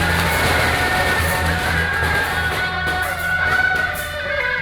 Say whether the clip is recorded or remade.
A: remade